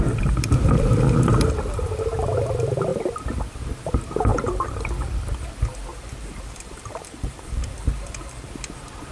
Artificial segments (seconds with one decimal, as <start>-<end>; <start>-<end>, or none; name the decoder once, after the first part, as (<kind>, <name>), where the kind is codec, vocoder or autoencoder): 4.3-4.8 (vocoder, BigVGAN v2); 5.9-8.5